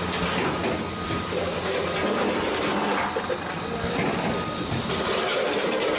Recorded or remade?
recorded